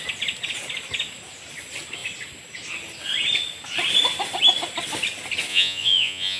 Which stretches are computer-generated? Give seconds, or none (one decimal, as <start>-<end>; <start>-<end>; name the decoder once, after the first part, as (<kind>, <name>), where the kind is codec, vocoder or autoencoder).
5.5-6.4 (vocoder, Vocos)